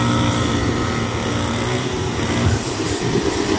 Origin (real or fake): real